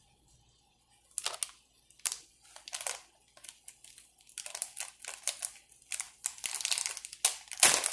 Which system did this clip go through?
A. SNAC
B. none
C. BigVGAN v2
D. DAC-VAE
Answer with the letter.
B